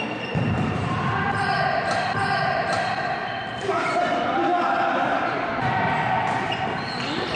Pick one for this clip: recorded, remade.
remade